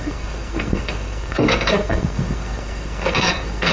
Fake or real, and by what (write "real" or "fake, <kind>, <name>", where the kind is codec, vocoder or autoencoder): fake, codec, SNAC